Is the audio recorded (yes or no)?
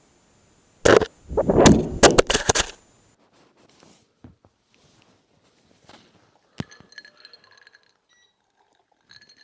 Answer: yes